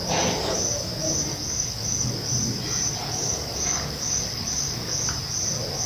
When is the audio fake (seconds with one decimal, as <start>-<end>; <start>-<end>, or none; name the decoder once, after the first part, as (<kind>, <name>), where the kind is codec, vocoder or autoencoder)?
1.3-2.1 (codec, DAC); 3.0-5.0